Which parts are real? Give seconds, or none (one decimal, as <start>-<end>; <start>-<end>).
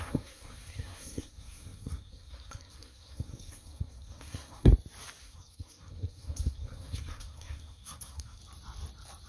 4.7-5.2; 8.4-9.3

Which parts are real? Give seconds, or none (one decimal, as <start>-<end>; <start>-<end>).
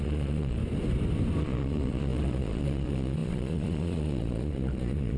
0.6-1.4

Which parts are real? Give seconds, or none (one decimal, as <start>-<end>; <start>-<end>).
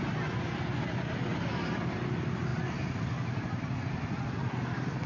0.0-5.1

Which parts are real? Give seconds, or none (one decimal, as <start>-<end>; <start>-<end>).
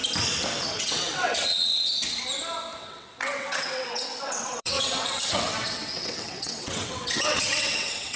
0.0-0.5; 1.7-2.8